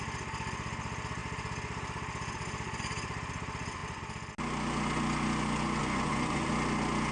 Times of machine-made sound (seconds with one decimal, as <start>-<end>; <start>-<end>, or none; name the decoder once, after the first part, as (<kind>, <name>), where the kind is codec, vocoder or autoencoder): 5.8-6.5 (vocoder, Vocos)